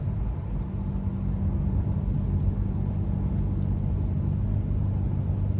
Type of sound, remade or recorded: recorded